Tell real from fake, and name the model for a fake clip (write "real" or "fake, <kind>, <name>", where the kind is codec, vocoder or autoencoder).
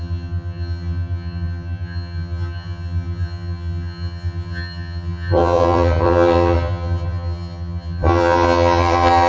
fake, vocoder, HiFi-GAN